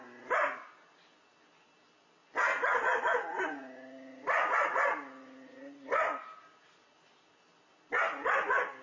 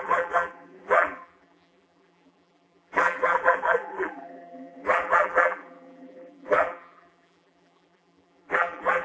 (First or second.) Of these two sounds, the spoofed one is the second